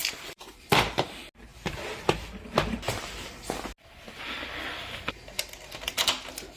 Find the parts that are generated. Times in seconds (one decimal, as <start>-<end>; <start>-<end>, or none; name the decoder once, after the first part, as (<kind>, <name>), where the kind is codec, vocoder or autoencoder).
0.0-0.7 (vocoder, BigVGAN v2); 1.5-2.5